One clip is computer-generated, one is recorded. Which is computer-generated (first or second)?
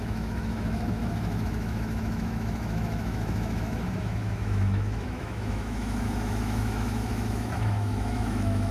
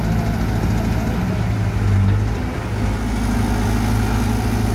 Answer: first